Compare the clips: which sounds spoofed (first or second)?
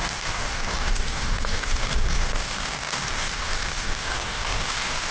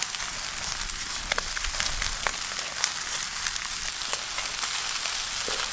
first